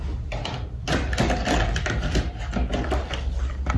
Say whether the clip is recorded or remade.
recorded